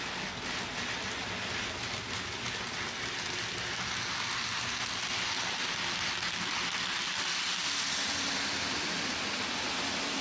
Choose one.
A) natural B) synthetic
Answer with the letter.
A